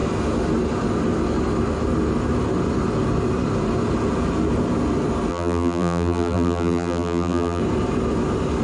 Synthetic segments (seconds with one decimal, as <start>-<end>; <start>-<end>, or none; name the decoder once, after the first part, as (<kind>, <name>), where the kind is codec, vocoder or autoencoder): 5.3-7.6 (vocoder, BigVGAN v2)